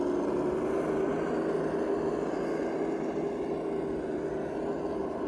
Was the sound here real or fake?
real